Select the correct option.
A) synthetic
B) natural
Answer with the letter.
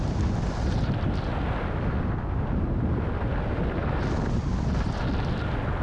B